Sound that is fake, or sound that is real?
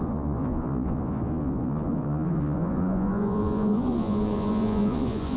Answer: fake